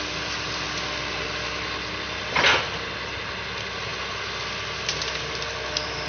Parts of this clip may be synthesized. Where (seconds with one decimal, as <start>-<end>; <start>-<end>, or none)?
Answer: none